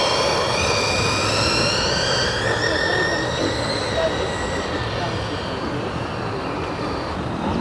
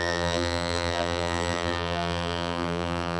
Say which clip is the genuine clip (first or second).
first